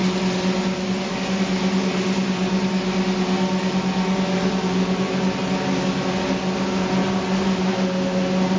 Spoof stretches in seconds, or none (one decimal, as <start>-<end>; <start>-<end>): none

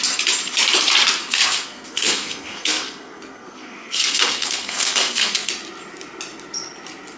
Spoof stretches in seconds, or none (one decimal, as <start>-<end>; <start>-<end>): 1.2-5.5

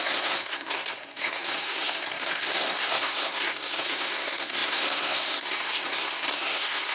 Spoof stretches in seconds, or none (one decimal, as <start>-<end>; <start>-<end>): 0.0-6.9

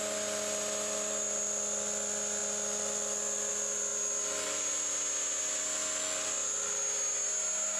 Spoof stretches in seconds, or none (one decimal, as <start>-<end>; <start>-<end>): none

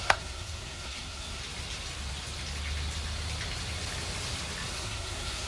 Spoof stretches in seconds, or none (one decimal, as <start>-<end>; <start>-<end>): 0.0-1.4; 4.7-5.5

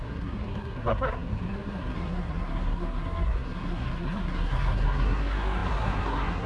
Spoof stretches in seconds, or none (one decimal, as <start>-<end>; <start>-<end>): 0.0-6.5

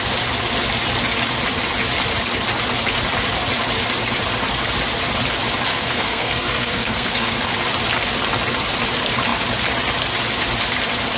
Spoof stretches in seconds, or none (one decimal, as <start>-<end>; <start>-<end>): 5.7-7.5